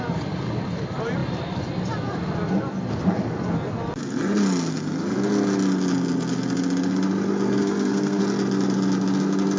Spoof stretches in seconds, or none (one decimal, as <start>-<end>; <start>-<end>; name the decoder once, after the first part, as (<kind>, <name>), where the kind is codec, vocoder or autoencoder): 7.6-8.2 (codec, SNAC)